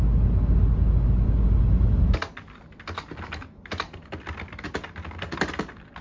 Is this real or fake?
real